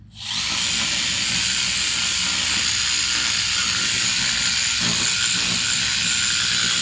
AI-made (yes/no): no